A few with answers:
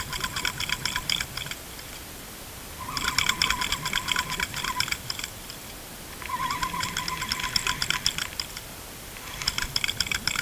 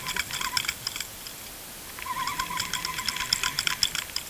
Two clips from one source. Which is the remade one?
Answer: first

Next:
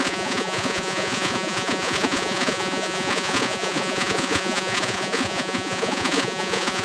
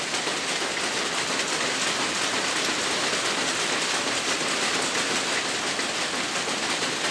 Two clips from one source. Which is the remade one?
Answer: first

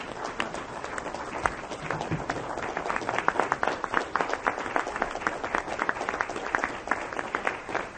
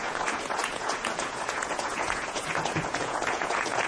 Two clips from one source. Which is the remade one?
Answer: second